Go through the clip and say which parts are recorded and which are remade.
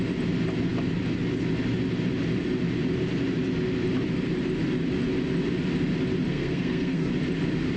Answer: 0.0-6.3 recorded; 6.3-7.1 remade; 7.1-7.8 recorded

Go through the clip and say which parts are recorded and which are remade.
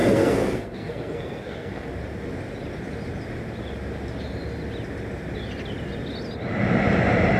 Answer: 0.0-1.9 remade; 1.9-7.4 recorded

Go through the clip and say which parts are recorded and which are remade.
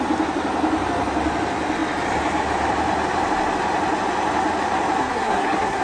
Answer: 0.0-5.0 recorded; 5.0-5.8 remade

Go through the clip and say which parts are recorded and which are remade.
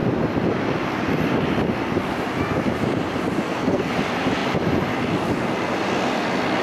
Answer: 0.0-3.4 recorded; 3.4-3.9 remade; 3.9-6.6 recorded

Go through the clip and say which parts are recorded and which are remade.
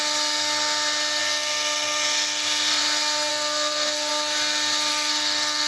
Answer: 0.0-1.2 recorded; 1.2-2.8 remade; 2.8-3.3 recorded; 3.3-4.1 remade; 4.1-4.9 recorded; 4.9-5.7 remade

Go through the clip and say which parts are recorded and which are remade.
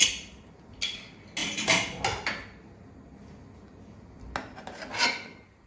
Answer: 0.0-5.7 recorded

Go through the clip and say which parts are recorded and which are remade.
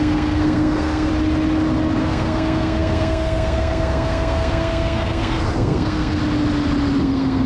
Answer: 0.0-1.1 remade; 1.1-2.0 recorded; 2.0-6.2 remade; 6.2-7.0 recorded; 7.0-7.5 remade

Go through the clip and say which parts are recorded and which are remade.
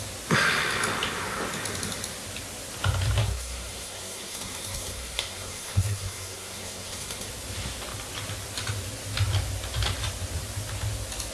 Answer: 0.0-3.2 recorded; 3.2-7.3 remade; 7.3-11.3 recorded